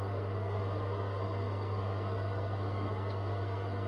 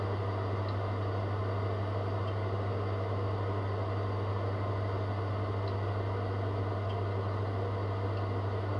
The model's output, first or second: first